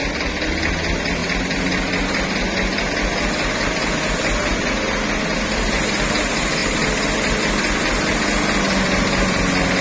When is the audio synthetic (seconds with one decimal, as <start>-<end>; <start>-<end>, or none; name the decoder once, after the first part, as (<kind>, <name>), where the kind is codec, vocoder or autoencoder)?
1.2-2.8 (vocoder, BigVGAN v2); 6.6-7.4